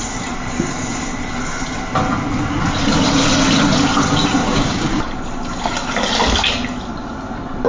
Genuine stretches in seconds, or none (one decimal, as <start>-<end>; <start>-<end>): 0.0-4.4; 5.0-7.7